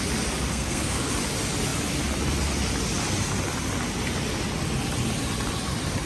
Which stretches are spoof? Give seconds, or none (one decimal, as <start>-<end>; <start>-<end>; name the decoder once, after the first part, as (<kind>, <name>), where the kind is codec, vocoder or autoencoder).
0.5-1.1 (codec, SNAC)